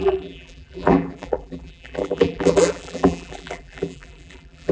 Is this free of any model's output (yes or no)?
no